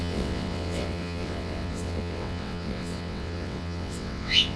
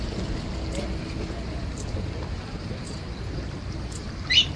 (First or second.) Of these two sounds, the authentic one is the second